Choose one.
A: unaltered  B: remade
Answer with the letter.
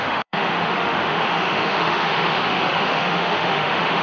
B